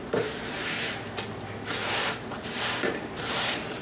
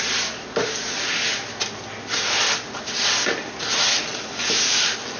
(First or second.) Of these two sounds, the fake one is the first